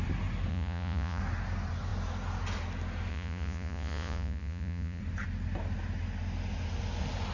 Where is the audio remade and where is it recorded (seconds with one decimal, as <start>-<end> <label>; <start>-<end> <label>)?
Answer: 0.0-0.5 recorded; 0.5-1.2 remade; 1.2-3.1 recorded; 3.1-5.0 remade; 5.0-7.3 recorded